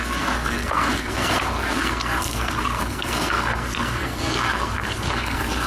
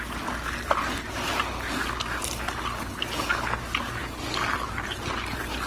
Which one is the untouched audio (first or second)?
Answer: second